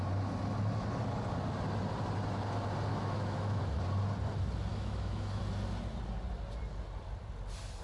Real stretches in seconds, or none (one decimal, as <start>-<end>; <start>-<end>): 0.0-2.9; 3.6-4.7; 5.4-7.8